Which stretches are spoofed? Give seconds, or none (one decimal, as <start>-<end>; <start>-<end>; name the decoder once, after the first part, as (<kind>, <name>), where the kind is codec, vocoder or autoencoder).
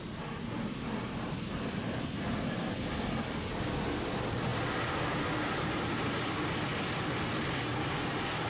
none